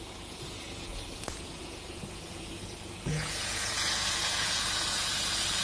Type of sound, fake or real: fake